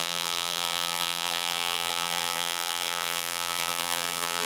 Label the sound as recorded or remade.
remade